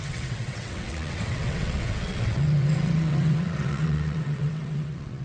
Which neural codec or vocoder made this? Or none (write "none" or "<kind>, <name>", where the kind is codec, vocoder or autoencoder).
vocoder, WaveNeXt